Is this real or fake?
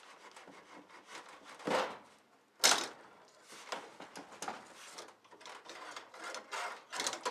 real